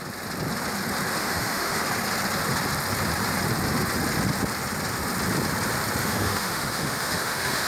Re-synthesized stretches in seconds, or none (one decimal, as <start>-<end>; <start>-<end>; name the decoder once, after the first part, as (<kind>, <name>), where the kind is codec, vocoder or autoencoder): 1.2-1.8 (autoencoder, DAC-VAE); 6.0-7.7